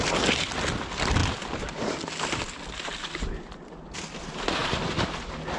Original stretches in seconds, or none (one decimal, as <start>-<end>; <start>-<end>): 0.0-5.6

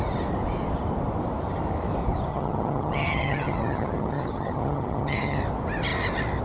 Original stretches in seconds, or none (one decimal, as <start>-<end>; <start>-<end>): 0.0-2.3; 5.4-6.4

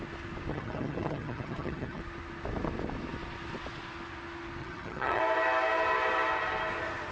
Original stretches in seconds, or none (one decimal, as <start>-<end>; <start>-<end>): 0.0-0.5; 2.0-4.6; 5.2-7.1